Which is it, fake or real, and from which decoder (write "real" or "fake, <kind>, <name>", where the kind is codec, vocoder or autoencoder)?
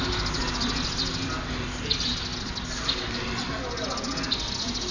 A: real